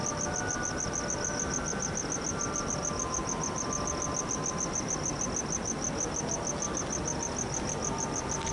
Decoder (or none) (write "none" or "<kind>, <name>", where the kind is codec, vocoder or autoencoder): none